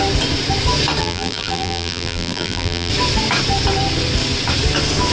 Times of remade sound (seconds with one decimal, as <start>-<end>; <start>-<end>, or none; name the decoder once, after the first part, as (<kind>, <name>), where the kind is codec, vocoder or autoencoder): 1.0-2.9 (vocoder, BigVGAN v2)